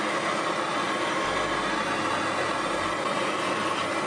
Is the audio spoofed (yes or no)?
no